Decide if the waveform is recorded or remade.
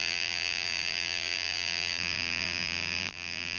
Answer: remade